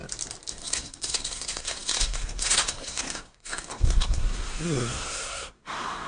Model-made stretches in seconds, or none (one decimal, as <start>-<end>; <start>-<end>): 0.5-6.1